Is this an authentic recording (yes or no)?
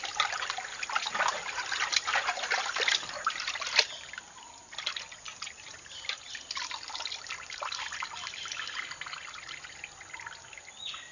no